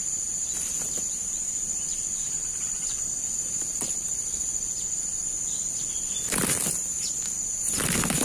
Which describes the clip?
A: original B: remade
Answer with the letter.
A